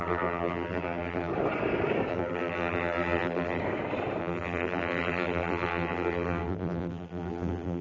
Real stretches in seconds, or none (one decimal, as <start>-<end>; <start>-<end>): 1.3-2.1; 3.6-4.2